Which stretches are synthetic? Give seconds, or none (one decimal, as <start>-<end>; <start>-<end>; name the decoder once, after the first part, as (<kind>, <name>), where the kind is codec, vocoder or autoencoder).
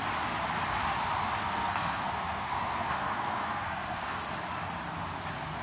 1.4-4.2 (codec, SNAC)